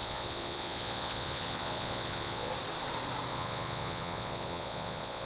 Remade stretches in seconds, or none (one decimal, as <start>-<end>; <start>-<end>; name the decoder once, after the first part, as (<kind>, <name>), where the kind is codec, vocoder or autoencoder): 0.0-2.5 (vocoder, Vocos); 3.3-5.3